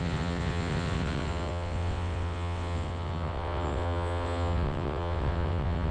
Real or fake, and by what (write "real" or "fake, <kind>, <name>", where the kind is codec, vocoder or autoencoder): fake, vocoder, WaveNeXt